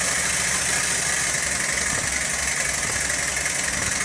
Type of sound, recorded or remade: recorded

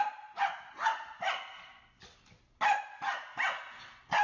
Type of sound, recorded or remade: recorded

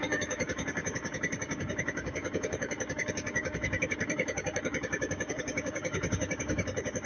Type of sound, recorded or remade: remade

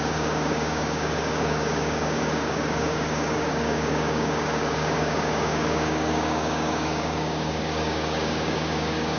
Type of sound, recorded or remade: remade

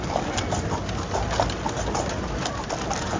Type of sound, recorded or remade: recorded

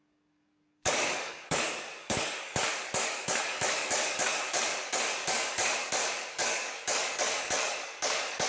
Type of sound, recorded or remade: remade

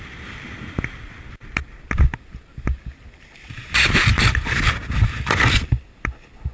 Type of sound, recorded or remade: recorded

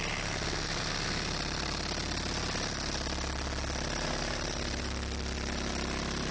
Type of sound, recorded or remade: recorded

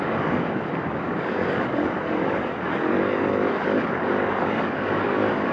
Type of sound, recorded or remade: remade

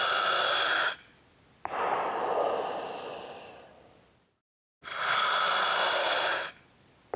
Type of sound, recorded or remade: recorded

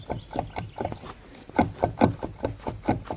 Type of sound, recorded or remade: recorded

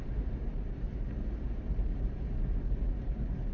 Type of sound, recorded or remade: recorded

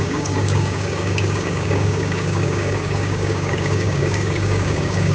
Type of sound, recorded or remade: remade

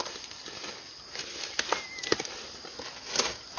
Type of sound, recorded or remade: recorded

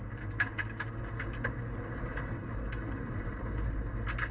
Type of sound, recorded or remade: recorded